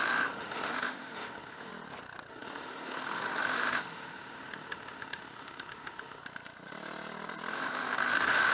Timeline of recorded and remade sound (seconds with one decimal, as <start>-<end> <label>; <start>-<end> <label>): 0.0-1.7 remade; 1.7-2.3 recorded; 2.3-6.2 remade; 6.2-7.5 recorded; 7.5-8.5 remade